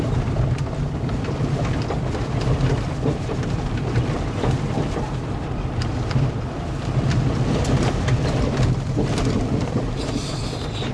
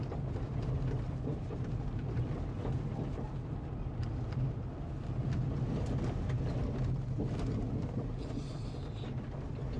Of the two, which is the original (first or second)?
second